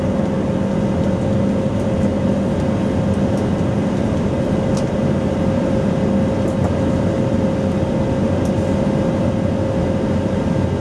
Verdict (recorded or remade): recorded